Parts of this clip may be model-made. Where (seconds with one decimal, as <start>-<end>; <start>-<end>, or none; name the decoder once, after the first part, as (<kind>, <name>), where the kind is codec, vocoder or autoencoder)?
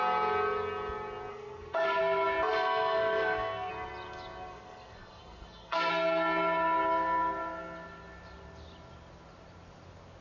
1.3-2.0 (codec, SNAC); 2.5-3.7; 4.5-5.9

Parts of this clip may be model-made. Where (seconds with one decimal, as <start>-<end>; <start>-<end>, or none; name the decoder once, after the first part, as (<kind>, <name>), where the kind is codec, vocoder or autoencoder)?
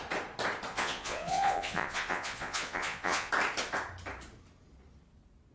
0.7-3.3 (vocoder, Vocos)